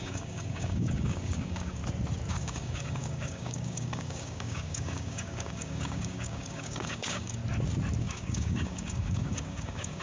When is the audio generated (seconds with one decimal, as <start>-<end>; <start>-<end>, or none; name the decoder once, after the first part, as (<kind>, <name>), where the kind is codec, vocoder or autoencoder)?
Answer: 0.0-1.8 (codec, DAC); 2.3-7.4; 8.0-10.0